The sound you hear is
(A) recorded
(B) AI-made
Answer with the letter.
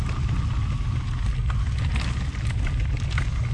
A